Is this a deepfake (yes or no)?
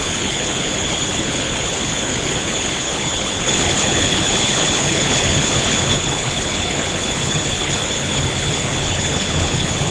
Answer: yes